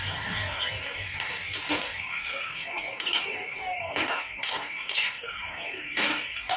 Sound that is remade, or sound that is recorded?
remade